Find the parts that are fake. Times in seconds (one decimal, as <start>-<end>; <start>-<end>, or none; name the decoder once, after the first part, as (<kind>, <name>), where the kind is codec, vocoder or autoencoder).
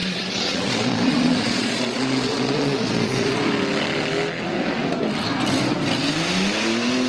0.0-3.4 (vocoder, Vocos)